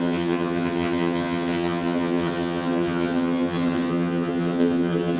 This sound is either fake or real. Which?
fake